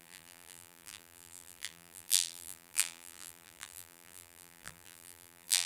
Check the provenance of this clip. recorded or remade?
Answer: remade